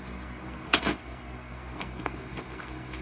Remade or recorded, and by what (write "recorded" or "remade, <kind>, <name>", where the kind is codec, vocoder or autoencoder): remade, codec, SNAC